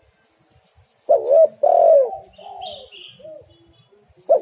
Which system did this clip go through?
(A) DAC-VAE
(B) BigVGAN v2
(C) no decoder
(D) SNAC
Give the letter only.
C